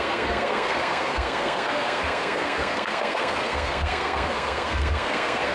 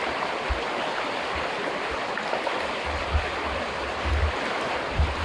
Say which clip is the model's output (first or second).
first